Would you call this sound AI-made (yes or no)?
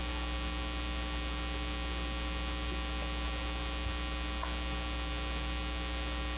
no